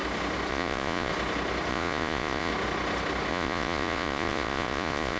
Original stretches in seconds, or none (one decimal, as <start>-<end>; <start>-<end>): 0.0-0.5; 1.1-1.7; 2.5-3.3